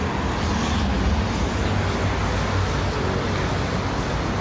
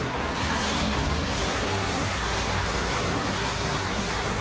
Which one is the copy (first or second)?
second